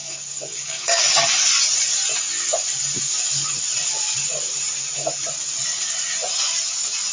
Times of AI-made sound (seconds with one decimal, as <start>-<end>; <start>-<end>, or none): 0.0-1.0